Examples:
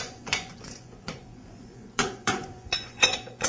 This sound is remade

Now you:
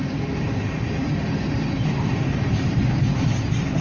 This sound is remade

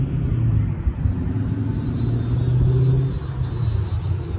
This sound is recorded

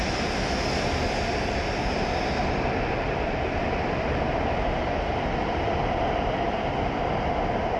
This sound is recorded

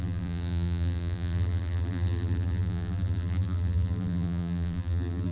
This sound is remade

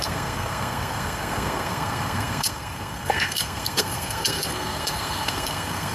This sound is remade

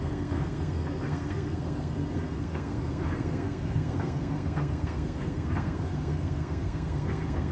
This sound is remade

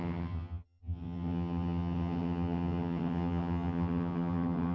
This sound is remade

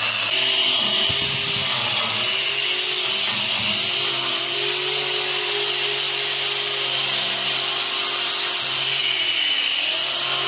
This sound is recorded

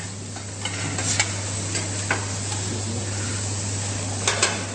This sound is recorded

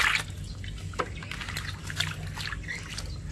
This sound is recorded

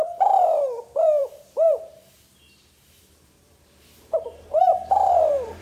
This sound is remade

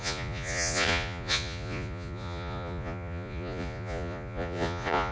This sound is remade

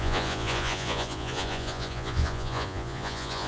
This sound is remade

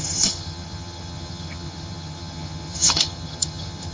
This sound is remade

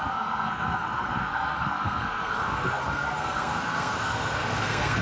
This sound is remade